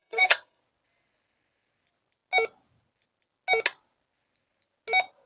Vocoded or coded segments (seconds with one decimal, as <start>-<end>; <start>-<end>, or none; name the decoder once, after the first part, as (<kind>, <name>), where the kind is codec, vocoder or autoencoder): 0.0-0.6 (codec, SNAC)